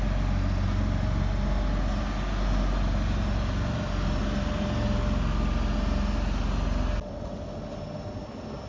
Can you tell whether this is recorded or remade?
recorded